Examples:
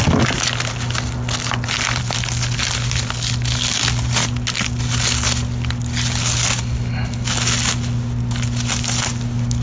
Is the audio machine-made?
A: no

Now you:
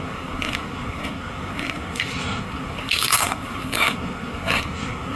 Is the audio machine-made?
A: yes